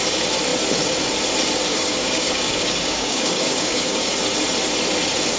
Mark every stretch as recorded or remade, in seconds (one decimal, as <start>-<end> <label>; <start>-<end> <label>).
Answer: 0.0-1.7 recorded; 1.7-4.2 remade; 4.2-5.4 recorded